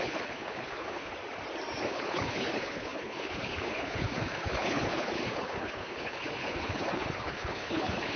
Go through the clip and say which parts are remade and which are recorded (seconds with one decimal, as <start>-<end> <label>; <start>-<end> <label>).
0.0-1.1 remade; 1.1-1.8 recorded; 1.8-8.2 remade